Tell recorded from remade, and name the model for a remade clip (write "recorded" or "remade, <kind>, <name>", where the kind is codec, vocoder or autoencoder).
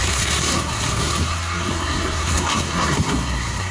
remade, codec, SNAC